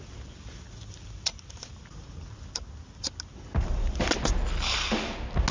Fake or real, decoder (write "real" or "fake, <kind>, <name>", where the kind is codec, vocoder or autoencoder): real